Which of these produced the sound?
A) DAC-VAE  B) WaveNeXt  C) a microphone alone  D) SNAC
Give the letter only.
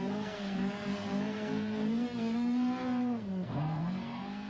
D